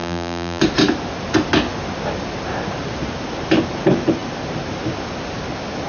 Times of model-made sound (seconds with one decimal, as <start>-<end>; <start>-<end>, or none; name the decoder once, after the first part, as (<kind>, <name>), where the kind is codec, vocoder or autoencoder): 0.0-0.6 (vocoder, BigVGAN v2)